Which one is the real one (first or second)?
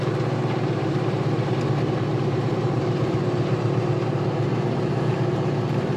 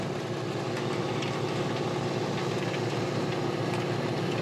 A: second